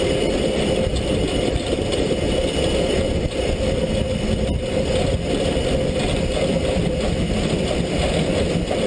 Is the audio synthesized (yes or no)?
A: no